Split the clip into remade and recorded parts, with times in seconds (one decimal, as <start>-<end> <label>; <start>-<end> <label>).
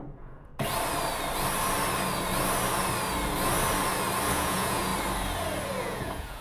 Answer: 0.0-0.5 remade; 0.5-4.3 recorded; 4.3-4.9 remade; 4.9-5.8 recorded; 5.8-6.4 remade